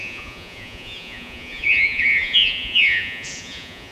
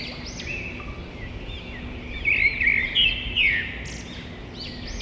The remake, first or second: first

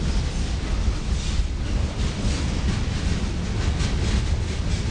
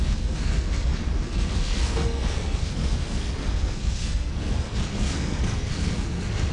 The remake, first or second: second